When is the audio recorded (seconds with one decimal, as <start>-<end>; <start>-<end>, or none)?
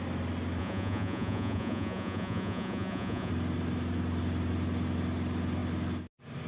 0.0-0.6; 3.3-6.5